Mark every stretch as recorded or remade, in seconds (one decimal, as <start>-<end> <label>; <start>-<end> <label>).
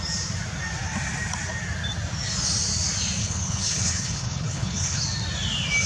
0.0-3.2 recorded; 3.2-5.0 remade; 5.0-5.9 recorded